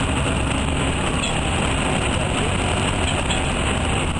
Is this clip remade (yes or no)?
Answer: no